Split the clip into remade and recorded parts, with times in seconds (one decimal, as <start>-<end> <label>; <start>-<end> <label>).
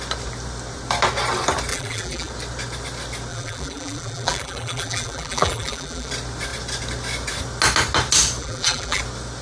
0.0-1.7 recorded; 1.7-2.3 remade; 2.3-3.3 recorded; 3.3-6.1 remade; 6.1-8.4 recorded; 8.4-9.0 remade; 9.0-9.4 recorded